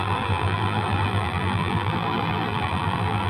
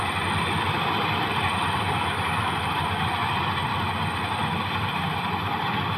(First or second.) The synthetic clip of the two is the first